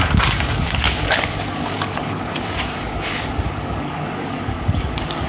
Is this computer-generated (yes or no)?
yes